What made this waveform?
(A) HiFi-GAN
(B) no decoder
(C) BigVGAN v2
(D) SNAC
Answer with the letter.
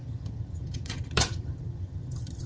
A